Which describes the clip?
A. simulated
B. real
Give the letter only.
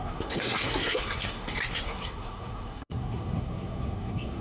A